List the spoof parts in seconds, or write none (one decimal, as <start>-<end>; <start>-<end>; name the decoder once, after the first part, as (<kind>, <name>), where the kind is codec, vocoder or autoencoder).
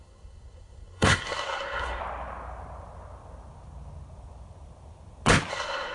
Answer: 0.0-2.0 (codec, SNAC); 5.5-5.9